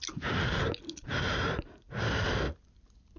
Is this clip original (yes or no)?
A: yes